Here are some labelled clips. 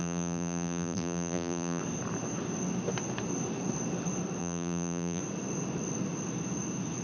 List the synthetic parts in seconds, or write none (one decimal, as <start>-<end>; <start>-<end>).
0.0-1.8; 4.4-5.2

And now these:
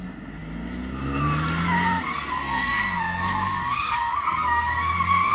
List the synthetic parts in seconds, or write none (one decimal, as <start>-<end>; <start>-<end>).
2.1-5.3

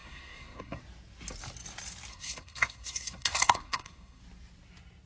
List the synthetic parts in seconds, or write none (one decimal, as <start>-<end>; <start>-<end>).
0.0-0.8; 2.1-4.2

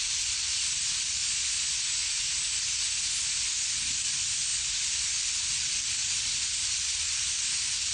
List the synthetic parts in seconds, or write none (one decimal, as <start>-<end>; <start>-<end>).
0.0-1.2; 3.4-4.5; 5.1-7.9

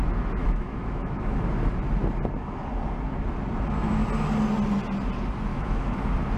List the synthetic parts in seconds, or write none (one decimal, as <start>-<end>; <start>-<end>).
0.4-1.4; 5.5-6.0

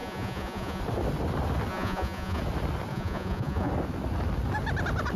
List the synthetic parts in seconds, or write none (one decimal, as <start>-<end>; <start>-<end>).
0.0-0.8; 1.7-2.4; 2.9-3.7